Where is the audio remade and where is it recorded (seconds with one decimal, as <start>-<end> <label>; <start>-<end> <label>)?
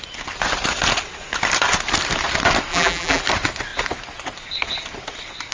0.0-2.7 recorded; 2.7-3.2 remade; 3.2-5.5 recorded